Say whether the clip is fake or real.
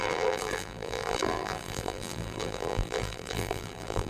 fake